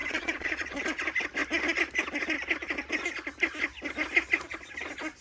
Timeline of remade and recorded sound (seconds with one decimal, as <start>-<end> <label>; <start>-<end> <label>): 0.0-0.8 remade; 0.8-5.2 recorded